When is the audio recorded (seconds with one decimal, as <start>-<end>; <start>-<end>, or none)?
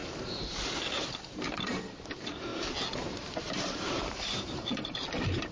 2.5-3.1